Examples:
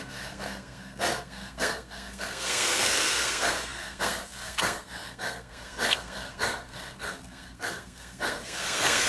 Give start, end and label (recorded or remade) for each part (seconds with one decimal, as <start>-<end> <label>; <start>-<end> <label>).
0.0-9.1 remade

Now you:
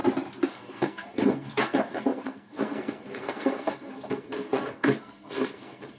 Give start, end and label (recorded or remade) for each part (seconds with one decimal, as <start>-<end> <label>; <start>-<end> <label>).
0.0-0.5 recorded; 0.5-6.0 remade

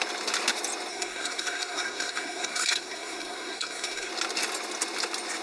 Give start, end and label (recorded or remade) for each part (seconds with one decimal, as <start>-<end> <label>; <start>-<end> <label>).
0.0-0.9 recorded; 0.9-4.1 remade; 4.1-5.4 recorded

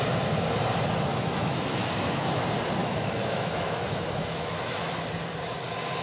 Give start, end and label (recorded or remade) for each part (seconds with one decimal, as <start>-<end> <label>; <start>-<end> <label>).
0.0-1.1 recorded; 1.1-2.4 remade; 2.4-2.8 recorded; 2.8-5.0 remade; 5.0-6.0 recorded

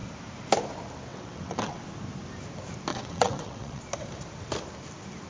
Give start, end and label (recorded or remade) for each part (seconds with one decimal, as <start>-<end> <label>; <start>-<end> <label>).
0.0-1.1 recorded; 1.1-1.8 remade; 1.8-2.9 recorded; 2.9-3.8 remade; 3.8-5.3 recorded

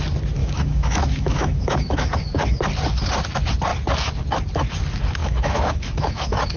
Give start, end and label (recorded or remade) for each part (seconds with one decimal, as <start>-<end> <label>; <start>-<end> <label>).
0.0-0.4 recorded; 0.4-2.6 remade; 2.6-5.2 recorded; 5.2-6.6 remade

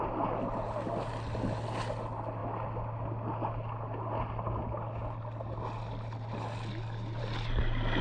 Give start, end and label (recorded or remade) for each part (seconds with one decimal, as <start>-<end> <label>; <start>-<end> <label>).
0.0-8.0 recorded